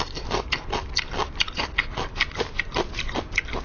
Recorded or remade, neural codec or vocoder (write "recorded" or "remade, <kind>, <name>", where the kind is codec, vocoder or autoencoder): recorded